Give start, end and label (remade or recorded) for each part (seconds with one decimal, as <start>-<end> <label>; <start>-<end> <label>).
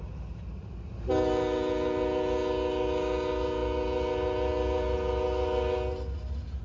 0.0-6.6 recorded